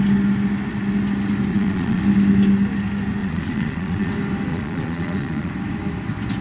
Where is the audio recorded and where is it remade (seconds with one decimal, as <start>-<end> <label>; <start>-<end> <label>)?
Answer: 0.0-1.5 recorded; 1.5-2.0 remade; 2.0-3.2 recorded; 3.2-4.1 remade; 4.1-4.5 recorded; 4.5-5.5 remade; 5.5-6.4 recorded